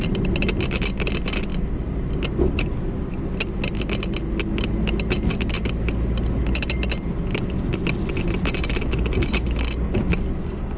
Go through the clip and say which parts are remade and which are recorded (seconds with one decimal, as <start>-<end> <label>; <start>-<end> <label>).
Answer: 0.0-10.8 recorded